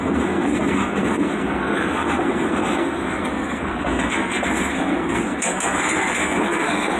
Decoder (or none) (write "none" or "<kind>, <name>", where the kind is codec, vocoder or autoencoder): codec, SNAC